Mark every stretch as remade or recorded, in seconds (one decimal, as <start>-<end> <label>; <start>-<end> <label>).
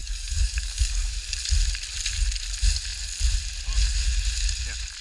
0.0-1.2 remade; 1.2-5.0 recorded